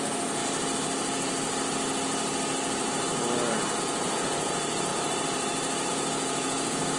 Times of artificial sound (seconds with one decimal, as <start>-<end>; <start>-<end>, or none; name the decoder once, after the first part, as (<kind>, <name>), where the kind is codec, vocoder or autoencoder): 0.0-0.4 (vocoder, Vocos); 3.8-4.9; 5.9-7.0